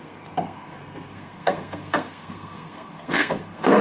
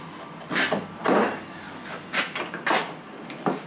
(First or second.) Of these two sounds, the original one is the second